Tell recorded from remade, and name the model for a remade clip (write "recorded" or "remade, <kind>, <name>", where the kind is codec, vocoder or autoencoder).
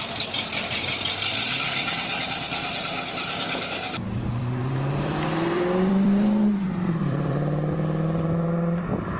remade, vocoder, BigVGAN v2